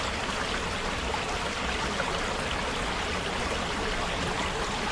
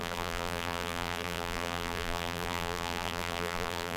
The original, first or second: first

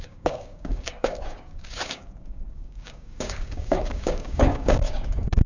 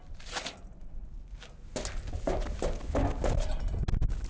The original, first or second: second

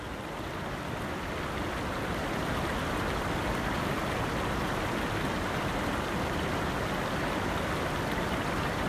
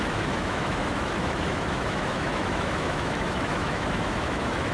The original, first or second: first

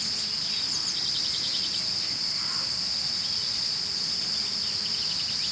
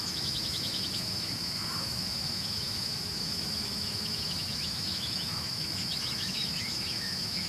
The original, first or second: first